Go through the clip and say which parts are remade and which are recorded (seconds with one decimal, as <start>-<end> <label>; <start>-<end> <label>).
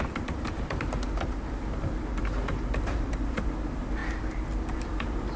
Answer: 0.0-4.0 remade; 4.0-4.7 recorded; 4.7-5.4 remade